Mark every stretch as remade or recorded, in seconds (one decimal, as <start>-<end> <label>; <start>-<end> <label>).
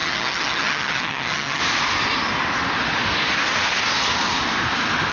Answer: 0.0-1.6 remade; 1.6-5.1 recorded